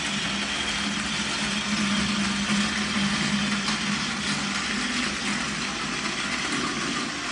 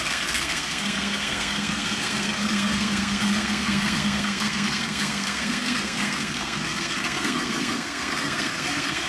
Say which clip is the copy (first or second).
second